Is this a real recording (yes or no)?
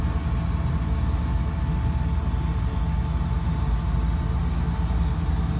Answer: yes